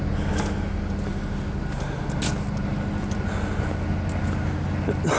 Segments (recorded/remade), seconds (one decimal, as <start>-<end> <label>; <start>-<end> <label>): 0.0-5.2 recorded